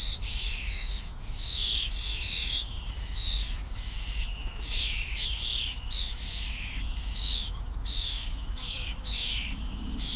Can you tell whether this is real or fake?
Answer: fake